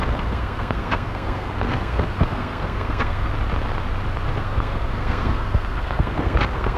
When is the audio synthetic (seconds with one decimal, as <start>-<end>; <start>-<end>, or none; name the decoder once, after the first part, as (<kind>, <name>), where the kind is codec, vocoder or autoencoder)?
0.0-3.3 (codec, SNAC); 4.4-6.8